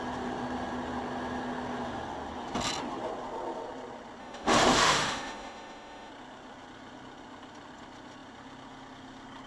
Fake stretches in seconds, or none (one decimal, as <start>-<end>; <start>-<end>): 4.2-6.1